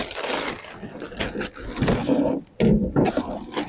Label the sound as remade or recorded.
recorded